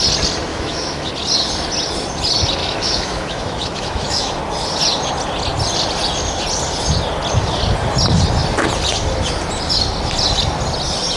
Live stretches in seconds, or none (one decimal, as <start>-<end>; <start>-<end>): 0.0-0.5; 1.1-2.6; 4.4-11.2